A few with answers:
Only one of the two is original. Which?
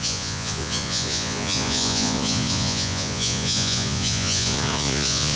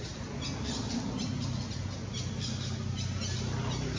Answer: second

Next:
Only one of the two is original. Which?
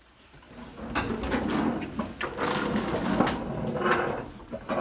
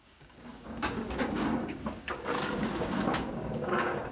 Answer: first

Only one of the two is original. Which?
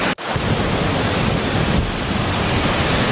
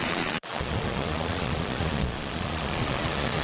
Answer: first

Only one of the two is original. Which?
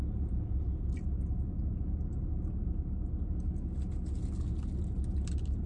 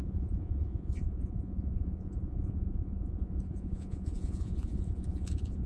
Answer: first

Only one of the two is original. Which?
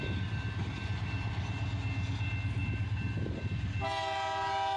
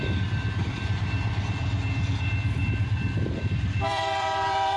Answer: first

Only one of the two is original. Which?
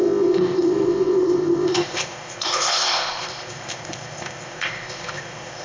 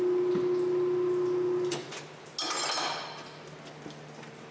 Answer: second